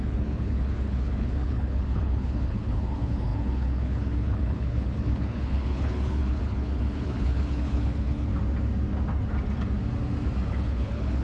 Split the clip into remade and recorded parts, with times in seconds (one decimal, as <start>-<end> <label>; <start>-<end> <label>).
0.0-8.3 remade; 8.3-10.5 recorded; 10.5-11.2 remade